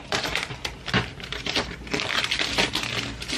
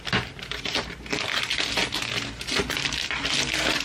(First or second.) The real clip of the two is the second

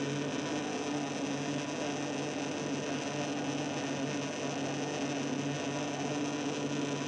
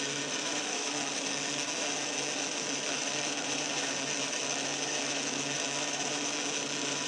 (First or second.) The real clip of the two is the first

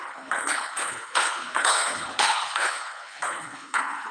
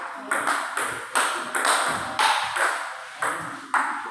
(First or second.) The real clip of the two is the second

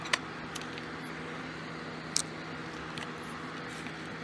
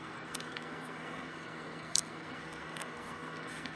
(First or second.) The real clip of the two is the first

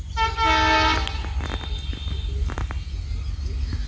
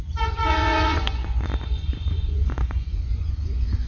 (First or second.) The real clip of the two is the first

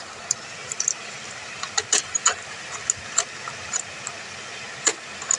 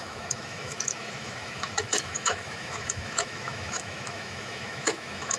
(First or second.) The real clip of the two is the first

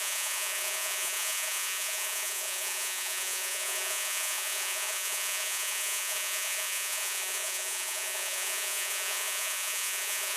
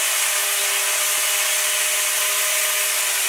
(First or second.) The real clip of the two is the second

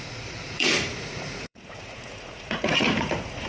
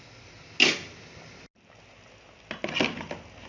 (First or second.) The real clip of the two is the second